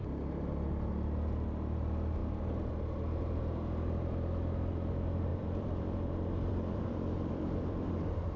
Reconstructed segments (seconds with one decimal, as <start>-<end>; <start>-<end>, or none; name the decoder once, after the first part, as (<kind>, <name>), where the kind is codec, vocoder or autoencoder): 5.3-7.9 (vocoder, BigVGAN v2)